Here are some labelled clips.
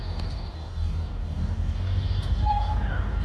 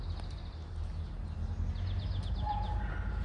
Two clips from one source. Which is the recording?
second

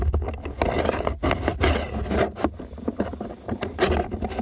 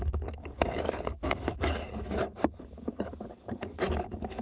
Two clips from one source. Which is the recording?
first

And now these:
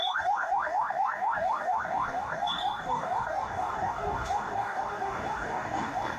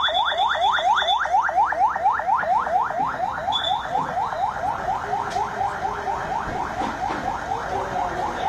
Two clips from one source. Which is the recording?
second